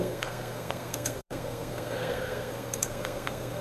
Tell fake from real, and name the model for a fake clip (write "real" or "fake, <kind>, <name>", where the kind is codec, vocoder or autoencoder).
fake, codec, SNAC